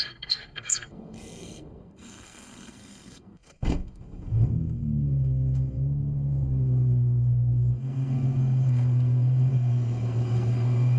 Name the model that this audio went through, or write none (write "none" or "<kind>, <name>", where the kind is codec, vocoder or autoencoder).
codec, SNAC